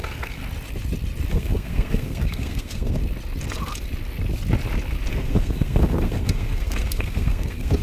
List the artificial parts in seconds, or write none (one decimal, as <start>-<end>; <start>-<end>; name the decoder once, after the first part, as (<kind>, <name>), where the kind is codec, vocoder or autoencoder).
0.0-0.4 (codec, SNAC); 1.3-3.0; 5.1-7.8